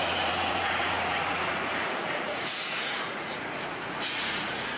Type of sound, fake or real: fake